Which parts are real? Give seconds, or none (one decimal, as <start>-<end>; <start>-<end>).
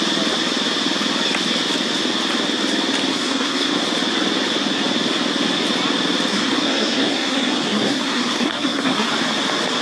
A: 0.0-3.1; 3.7-6.3; 9.1-9.8